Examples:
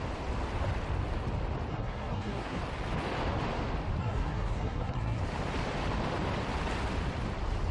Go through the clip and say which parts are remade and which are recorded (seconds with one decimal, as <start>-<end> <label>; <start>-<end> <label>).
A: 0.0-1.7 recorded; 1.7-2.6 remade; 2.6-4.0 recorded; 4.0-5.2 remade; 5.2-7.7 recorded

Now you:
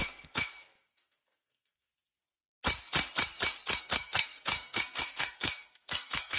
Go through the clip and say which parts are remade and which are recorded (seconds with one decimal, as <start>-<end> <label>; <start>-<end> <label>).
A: 0.0-1.9 remade; 1.9-3.8 recorded; 3.8-6.4 remade

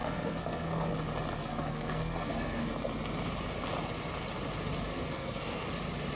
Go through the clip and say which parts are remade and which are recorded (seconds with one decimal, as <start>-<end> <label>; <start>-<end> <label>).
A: 0.0-0.9 remade; 0.9-1.4 recorded; 1.4-2.7 remade; 2.7-4.9 recorded; 4.9-5.7 remade; 5.7-6.2 recorded

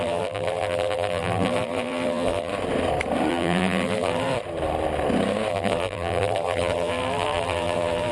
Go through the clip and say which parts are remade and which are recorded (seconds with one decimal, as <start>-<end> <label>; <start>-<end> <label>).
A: 0.0-2.5 remade; 2.5-3.3 recorded; 3.3-4.3 remade; 4.3-5.5 recorded; 5.5-8.1 remade

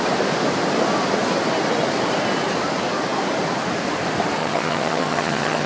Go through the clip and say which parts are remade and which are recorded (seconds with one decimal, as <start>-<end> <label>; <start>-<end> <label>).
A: 0.0-4.4 recorded; 4.4-5.7 remade

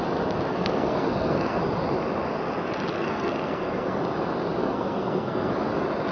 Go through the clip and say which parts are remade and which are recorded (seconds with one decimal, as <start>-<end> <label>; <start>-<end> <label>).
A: 0.0-0.5 recorded; 0.5-1.6 remade; 1.6-2.9 recorded; 2.9-4.0 remade; 4.0-4.6 recorded; 4.6-5.5 remade; 5.5-6.1 recorded

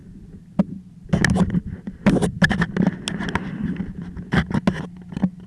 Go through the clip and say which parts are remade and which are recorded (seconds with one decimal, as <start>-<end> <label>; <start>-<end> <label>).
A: 0.0-5.5 recorded